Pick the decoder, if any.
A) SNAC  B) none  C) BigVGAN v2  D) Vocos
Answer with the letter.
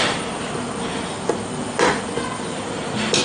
B